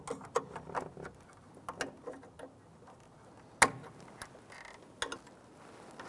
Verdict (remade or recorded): recorded